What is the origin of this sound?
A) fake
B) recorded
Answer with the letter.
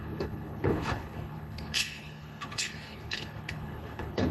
A